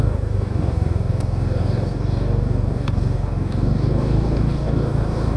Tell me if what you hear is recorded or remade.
remade